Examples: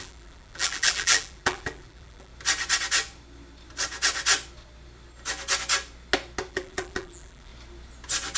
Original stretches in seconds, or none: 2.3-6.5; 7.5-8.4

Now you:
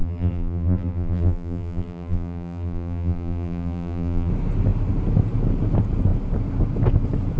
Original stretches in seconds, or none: 4.3-7.4

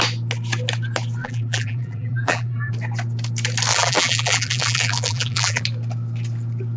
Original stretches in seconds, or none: 0.0-1.2; 2.7-3.7; 5.6-6.8

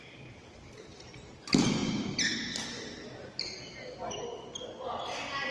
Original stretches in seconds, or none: 0.0-0.4; 1.1-5.5

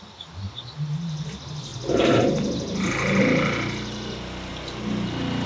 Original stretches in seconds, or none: 0.0-5.5